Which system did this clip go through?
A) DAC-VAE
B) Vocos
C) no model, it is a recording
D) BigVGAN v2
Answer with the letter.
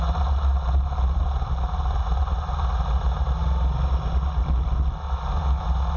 C